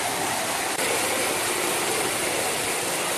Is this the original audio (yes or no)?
yes